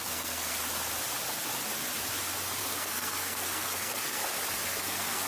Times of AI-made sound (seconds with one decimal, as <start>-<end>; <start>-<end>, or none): 0.0-0.6; 2.6-4.2; 4.8-5.3